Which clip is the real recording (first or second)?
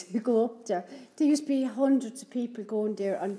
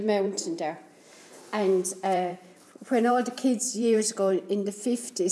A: first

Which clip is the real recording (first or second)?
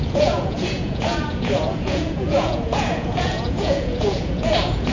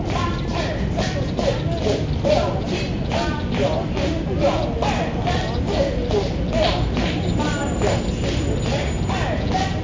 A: second